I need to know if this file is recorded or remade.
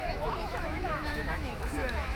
remade